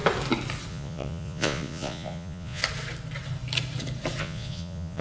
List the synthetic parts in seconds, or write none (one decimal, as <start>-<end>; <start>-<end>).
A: 0.7-2.6; 4.2-5.0